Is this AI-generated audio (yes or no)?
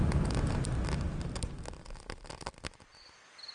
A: no